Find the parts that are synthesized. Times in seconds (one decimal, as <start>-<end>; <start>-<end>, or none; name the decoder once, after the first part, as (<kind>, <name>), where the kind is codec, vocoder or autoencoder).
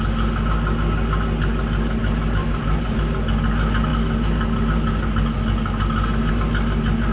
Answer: 2.4-3.0 (vocoder, BigVGAN v2)